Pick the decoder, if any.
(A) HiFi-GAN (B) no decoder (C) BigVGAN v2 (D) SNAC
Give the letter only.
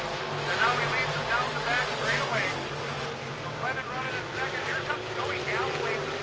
B